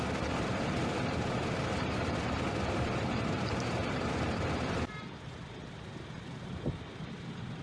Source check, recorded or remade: remade